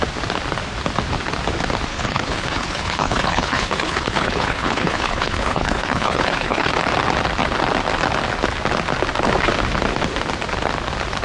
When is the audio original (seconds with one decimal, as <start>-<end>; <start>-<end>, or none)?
0.0-1.9; 6.7-11.2